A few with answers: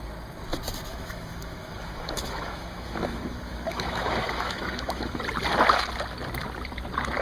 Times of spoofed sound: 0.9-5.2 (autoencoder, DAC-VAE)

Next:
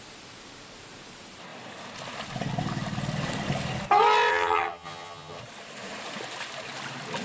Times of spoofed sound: 4.3-5.4 (vocoder, HiFi-GAN)